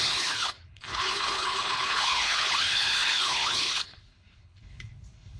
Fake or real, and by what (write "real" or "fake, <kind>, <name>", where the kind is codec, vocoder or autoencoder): fake, codec, HILCodec